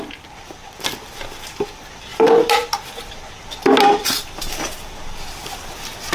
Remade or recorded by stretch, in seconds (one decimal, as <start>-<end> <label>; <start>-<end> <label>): 0.0-2.1 recorded; 2.1-3.1 remade; 3.1-3.9 recorded; 3.9-4.5 remade; 4.5-6.1 recorded